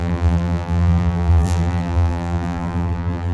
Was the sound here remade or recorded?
remade